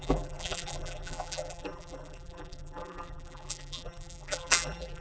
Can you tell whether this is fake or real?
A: fake